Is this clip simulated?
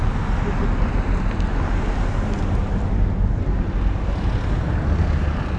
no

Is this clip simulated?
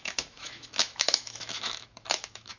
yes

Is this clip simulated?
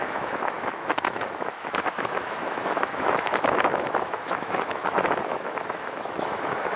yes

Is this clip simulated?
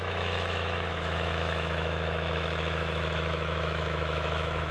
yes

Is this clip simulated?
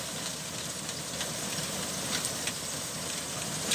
no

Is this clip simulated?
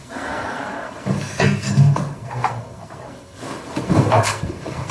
yes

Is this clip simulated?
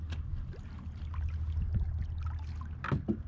no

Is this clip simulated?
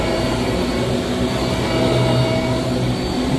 no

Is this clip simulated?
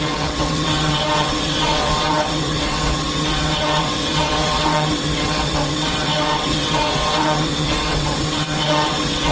yes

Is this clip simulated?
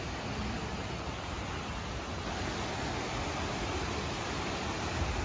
no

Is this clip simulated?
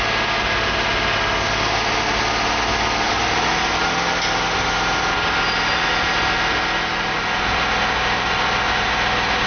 no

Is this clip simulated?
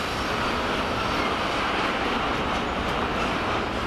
no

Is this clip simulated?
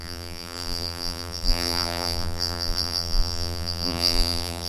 yes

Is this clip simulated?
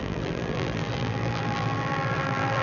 yes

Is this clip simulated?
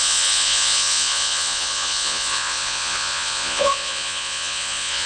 yes